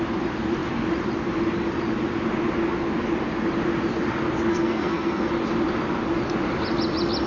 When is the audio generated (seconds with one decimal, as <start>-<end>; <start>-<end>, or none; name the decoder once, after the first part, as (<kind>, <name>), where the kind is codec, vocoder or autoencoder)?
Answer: 4.5-5.3 (codec, SNAC)